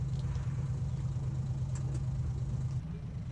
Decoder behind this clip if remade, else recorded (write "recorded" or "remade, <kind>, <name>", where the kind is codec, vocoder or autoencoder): recorded